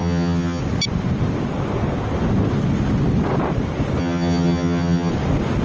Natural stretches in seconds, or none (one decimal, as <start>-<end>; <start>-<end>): 0.6-4.0; 5.1-5.6